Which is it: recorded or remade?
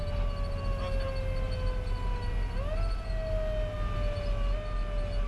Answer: recorded